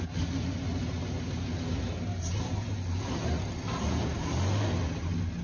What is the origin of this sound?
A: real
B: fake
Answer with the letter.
A